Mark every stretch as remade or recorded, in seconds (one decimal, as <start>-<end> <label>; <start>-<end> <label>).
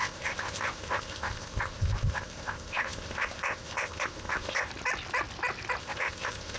0.0-4.7 remade; 4.7-5.8 recorded; 5.8-6.6 remade